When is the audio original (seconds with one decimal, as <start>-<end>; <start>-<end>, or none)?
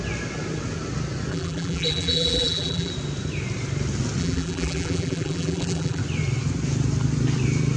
0.0-1.3; 2.9-4.2; 6.0-7.8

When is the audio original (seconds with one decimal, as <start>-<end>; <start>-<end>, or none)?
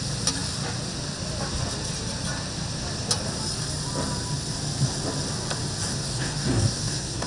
0.0-5.9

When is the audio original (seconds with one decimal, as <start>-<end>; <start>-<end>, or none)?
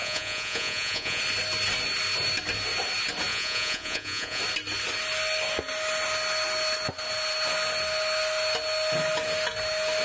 1.2-3.3; 4.4-10.0